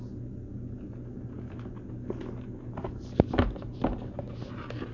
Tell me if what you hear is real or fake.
real